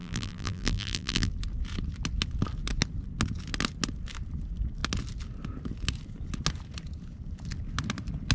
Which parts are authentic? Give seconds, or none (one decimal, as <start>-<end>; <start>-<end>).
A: 1.3-8.3